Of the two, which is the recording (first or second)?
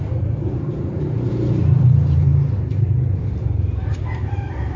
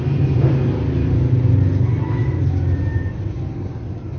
second